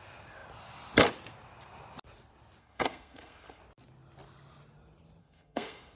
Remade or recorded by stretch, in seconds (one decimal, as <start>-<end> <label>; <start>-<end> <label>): 0.0-2.6 recorded; 2.6-3.6 remade; 3.6-5.2 recorded; 5.2-6.0 remade